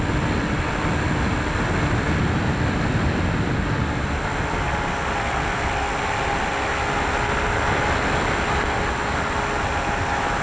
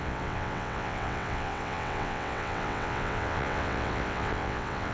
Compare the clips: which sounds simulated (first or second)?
second